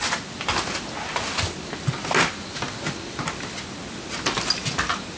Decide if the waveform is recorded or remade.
recorded